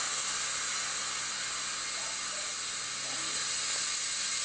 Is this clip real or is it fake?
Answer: real